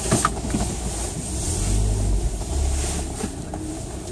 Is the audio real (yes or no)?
yes